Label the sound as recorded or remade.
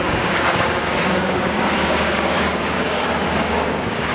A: remade